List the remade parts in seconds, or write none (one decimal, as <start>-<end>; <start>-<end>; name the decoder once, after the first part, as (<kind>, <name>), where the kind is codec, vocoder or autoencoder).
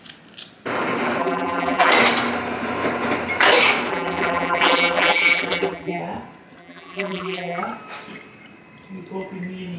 1.2-1.9 (vocoder, BigVGAN v2); 3.9-6.0; 6.6-7.6